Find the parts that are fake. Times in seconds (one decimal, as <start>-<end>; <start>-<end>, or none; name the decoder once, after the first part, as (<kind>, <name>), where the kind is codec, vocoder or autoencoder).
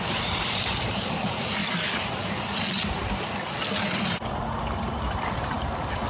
0.0-1.6 (vocoder, BigVGAN v2); 5.3-6.1